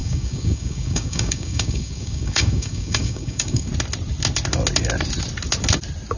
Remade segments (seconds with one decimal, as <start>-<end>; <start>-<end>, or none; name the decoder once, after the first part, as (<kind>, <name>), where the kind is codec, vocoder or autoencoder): 0.0-3.7 (codec, DAC)